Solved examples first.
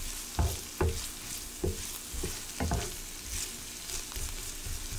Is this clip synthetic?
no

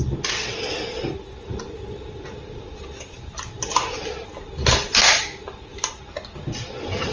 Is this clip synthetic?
no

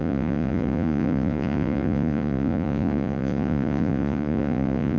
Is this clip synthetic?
yes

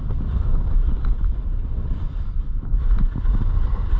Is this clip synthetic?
no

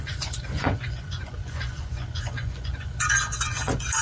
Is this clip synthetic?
yes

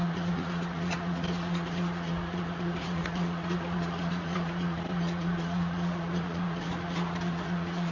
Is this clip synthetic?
yes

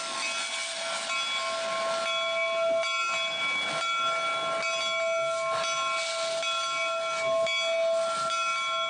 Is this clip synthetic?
no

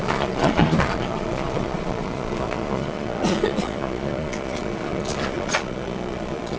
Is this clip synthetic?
yes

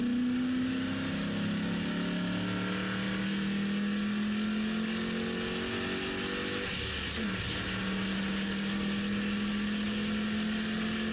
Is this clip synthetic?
no